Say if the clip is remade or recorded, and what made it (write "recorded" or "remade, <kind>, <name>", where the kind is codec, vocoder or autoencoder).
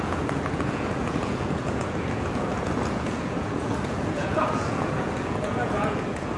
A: remade, vocoder, Vocos